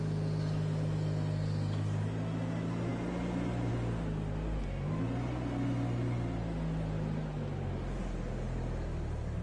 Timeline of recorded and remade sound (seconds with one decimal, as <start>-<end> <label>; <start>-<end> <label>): 0.0-9.4 recorded